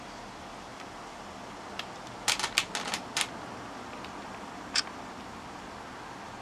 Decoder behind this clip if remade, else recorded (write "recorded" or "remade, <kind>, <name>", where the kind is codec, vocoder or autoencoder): recorded